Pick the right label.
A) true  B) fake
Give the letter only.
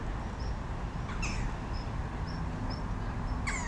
A